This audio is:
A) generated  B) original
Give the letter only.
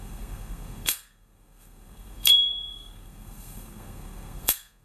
A